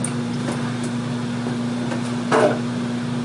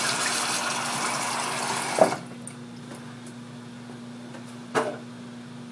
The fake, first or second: first